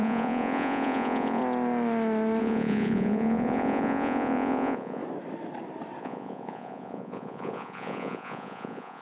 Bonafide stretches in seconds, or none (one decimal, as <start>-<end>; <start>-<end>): 1.4-2.4; 5.0-6.0